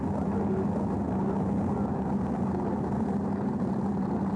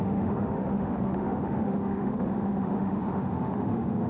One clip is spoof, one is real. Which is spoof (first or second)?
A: second